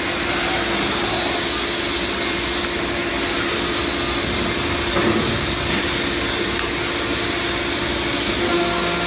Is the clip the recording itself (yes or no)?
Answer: yes